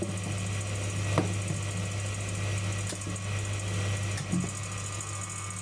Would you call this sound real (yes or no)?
yes